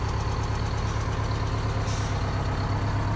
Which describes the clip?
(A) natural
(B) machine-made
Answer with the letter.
A